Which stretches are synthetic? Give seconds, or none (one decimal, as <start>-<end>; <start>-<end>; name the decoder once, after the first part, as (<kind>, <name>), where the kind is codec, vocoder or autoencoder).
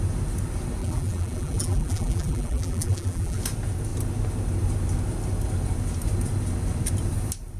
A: 0.8-3.4 (vocoder, BigVGAN v2)